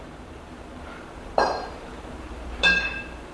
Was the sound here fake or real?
fake